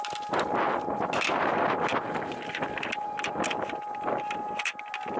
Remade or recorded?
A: recorded